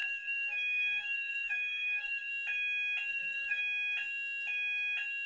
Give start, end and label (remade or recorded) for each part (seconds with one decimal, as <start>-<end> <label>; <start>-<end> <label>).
0.0-2.3 remade; 2.3-3.1 recorded; 3.1-3.6 remade; 3.6-5.3 recorded